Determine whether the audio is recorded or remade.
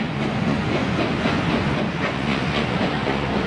remade